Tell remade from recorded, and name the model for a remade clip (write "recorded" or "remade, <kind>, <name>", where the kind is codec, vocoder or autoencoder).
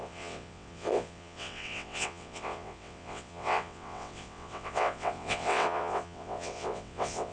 remade, vocoder, WaveNeXt